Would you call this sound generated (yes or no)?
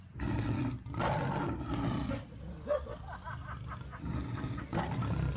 no